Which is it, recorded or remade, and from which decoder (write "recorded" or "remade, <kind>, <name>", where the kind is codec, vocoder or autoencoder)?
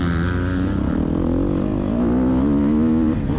recorded